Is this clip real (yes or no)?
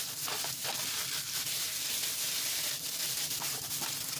no